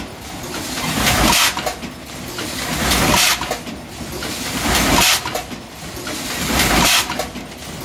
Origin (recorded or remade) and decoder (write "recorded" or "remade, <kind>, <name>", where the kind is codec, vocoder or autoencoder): recorded